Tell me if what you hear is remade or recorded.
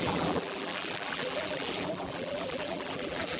remade